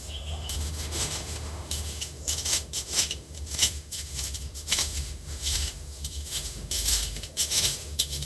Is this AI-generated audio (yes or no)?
yes